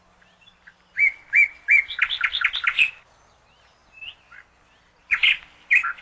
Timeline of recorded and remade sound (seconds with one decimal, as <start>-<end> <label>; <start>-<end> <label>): 0.0-6.0 recorded

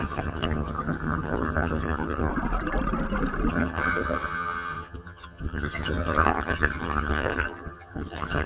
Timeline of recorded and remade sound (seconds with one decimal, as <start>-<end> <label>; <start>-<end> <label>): 0.0-2.3 remade; 2.3-3.5 recorded; 3.5-8.5 remade